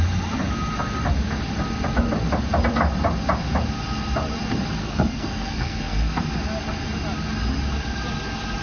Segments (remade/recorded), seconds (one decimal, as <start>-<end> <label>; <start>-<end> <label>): 0.0-4.8 recorded; 4.8-6.2 remade; 6.2-8.6 recorded